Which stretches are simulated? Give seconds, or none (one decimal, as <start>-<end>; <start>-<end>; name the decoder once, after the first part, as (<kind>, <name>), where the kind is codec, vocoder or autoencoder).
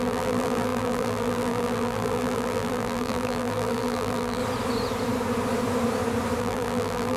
0.0-4.4 (vocoder, BigVGAN v2); 6.4-7.2